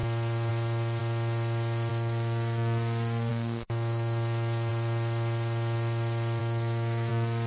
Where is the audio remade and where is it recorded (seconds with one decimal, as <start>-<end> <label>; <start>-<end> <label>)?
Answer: 0.0-3.3 recorded; 3.3-4.7 remade; 4.7-6.4 recorded; 6.4-7.1 remade; 7.1-7.5 recorded